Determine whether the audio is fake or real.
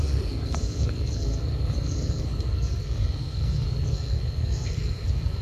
fake